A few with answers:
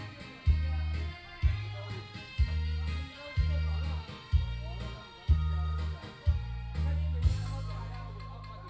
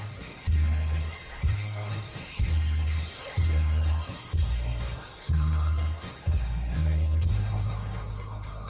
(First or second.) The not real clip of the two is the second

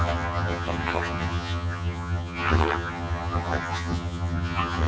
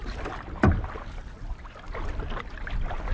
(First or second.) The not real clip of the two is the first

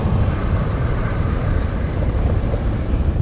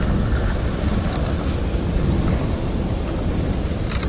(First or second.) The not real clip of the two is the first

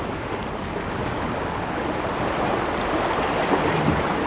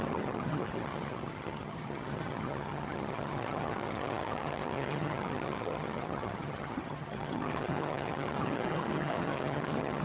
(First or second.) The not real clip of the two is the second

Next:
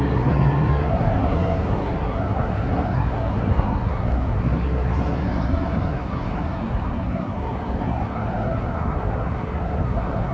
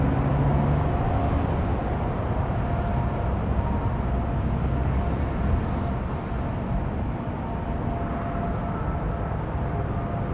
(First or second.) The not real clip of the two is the first